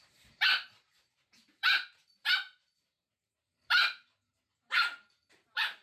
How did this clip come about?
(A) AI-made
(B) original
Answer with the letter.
A